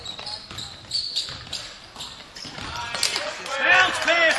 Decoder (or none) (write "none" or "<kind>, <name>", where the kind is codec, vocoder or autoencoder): none